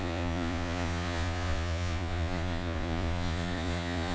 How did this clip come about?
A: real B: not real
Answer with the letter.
B